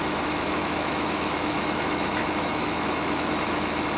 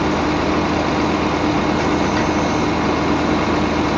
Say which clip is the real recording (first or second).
second